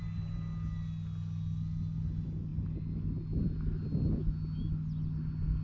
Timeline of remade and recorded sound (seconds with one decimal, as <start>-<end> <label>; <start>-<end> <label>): 0.0-5.6 recorded